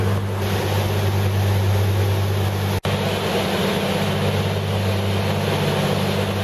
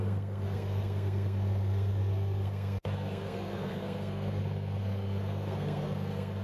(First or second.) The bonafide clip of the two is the first